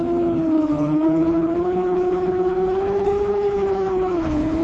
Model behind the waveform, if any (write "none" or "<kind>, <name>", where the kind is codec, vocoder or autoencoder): codec, HILCodec